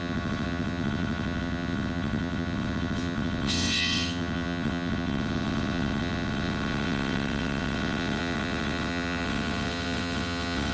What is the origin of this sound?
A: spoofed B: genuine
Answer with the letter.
A